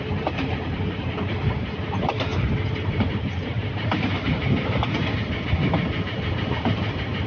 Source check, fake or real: fake